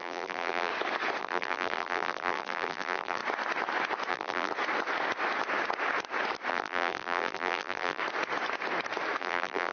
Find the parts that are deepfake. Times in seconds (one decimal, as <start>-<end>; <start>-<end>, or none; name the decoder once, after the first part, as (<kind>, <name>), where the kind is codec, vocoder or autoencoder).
0.0-0.7 (vocoder, BigVGAN v2); 1.2-3.2; 4.1-4.5; 6.5-8.0; 9.2-9.7